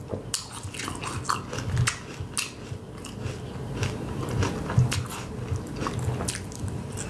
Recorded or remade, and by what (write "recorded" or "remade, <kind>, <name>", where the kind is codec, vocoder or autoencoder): recorded